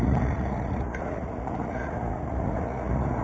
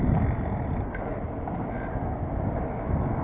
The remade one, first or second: first